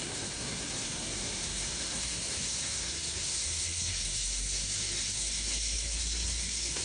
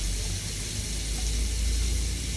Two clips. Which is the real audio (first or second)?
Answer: second